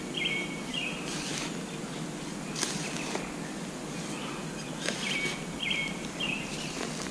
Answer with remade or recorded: recorded